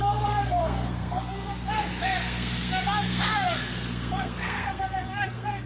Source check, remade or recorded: remade